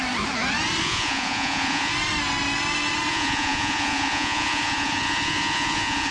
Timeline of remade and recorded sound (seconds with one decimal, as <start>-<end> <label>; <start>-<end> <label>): 0.0-0.8 recorded; 0.8-1.9 remade; 1.9-3.1 recorded; 3.1-6.1 remade